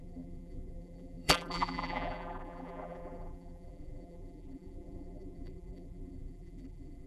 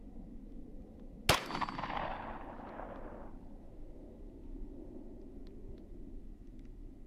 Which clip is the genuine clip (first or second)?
second